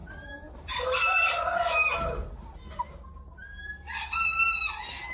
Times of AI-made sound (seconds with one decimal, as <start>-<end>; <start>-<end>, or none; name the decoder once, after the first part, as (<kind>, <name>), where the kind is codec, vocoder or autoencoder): 0.0-1.6 (vocoder, BigVGAN v2)

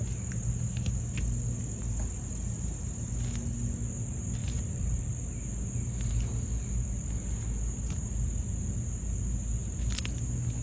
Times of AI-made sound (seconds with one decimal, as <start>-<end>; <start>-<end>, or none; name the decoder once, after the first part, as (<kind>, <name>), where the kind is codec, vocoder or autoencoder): 4.4-5.1 (vocoder, BigVGAN v2)

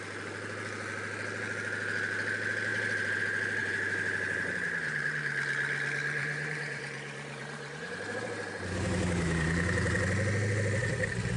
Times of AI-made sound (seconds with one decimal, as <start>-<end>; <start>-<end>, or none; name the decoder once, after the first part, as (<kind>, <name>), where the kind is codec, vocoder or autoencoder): 2.7-3.2 (vocoder, BigVGAN v2); 3.6-5.1; 6.2-10.0

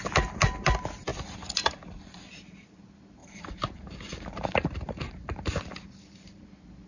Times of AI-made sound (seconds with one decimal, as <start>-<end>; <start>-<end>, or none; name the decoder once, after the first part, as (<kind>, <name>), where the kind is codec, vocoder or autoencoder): 3.2-6.4 (vocoder, BigVGAN v2)